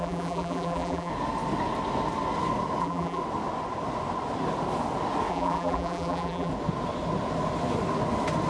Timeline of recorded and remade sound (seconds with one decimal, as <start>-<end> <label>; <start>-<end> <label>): 0.0-1.1 remade; 1.1-2.8 recorded; 2.8-3.2 remade; 3.2-5.3 recorded; 5.3-6.5 remade; 6.5-8.5 recorded